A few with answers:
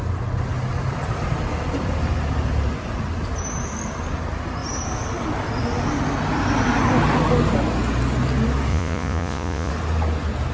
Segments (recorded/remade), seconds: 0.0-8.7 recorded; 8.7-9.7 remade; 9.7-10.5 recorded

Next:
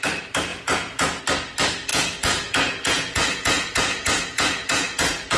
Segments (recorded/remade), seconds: 0.0-0.5 recorded; 0.5-1.2 remade; 1.2-1.9 recorded; 1.9-5.4 remade

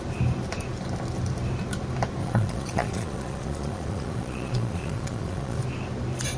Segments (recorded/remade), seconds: 0.0-2.2 recorded; 2.2-5.6 remade; 5.6-6.4 recorded

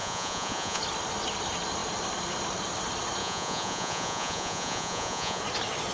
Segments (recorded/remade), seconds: 0.0-0.8 remade; 0.8-3.2 recorded; 3.2-5.4 remade; 5.4-5.9 recorded

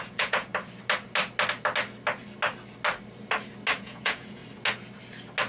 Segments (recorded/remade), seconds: 0.0-0.5 remade; 0.5-3.8 recorded; 3.8-4.4 remade; 4.4-5.5 recorded

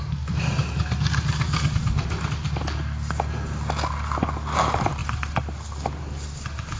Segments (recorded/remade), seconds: 0.0-6.8 recorded

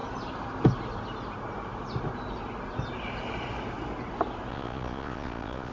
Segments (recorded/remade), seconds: 0.0-4.5 recorded; 4.5-5.7 remade

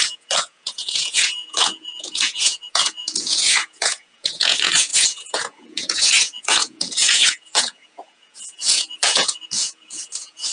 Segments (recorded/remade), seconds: 0.0-10.5 remade